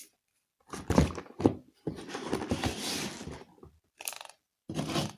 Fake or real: real